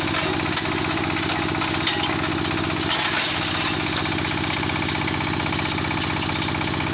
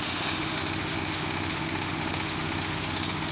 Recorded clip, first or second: first